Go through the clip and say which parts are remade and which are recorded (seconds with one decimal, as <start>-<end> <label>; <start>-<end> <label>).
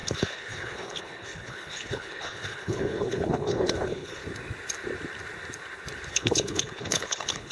0.0-4.2 remade; 4.2-6.1 recorded; 6.1-7.5 remade